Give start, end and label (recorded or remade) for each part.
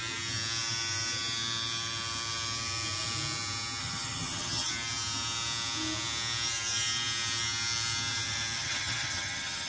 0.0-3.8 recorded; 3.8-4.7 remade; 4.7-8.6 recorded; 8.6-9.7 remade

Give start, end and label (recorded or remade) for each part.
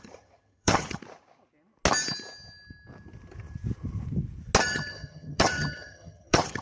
0.0-1.0 remade; 1.0-4.6 recorded; 4.6-6.6 remade